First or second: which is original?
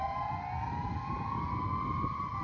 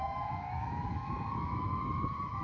first